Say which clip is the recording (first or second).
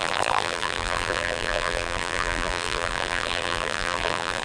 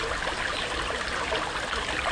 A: second